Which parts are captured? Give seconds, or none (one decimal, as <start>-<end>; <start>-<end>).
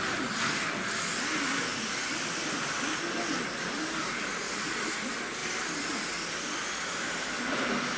0.0-1.7; 4.7-5.4; 5.9-8.0